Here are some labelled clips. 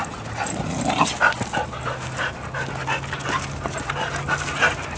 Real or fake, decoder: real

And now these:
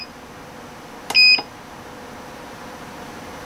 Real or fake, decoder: real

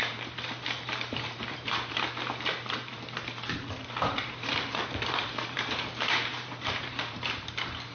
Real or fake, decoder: fake, vocoder, BigVGAN v2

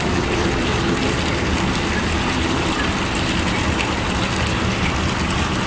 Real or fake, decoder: real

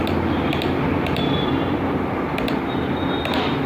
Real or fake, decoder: fake, vocoder, BigVGAN v2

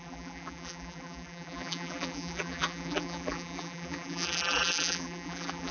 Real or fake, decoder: fake, vocoder, BigVGAN v2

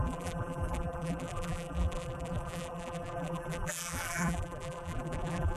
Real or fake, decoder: fake, vocoder, BigVGAN v2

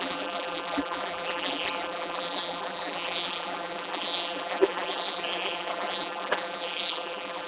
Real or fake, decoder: fake, vocoder, BigVGAN v2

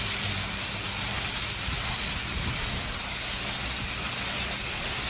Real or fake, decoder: real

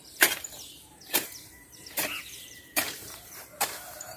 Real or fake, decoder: fake, vocoder, BigVGAN v2